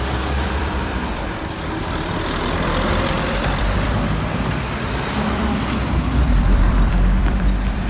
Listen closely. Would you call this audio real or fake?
fake